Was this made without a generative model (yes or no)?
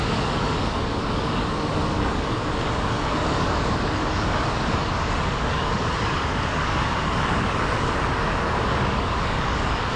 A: no